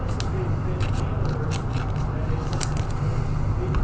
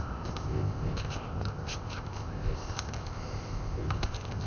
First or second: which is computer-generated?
second